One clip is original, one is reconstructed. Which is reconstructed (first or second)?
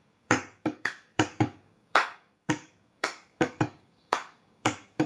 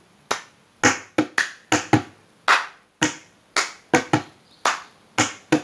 first